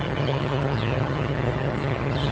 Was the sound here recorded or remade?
remade